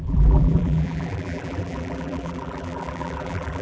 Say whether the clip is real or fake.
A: fake